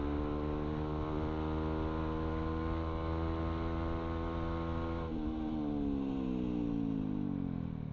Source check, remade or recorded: recorded